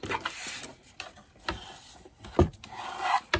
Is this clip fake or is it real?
real